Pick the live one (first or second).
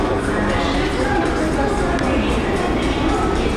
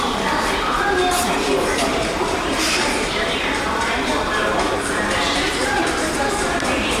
first